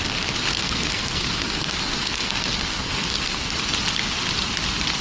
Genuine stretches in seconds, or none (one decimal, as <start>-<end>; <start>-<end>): 0.0-0.5; 3.5-5.0